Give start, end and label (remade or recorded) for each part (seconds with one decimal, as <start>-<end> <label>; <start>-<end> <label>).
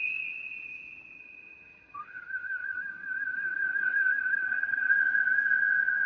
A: 0.0-1.2 recorded; 1.2-4.9 remade; 4.9-6.1 recorded